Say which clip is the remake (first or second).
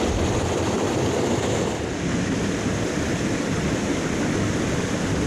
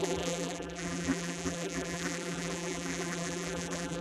second